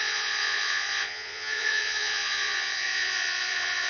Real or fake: fake